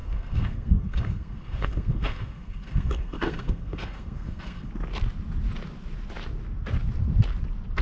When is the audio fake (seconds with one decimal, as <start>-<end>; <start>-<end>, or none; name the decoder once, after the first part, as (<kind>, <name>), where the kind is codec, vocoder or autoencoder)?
0.0-4.7 (codec, SNAC)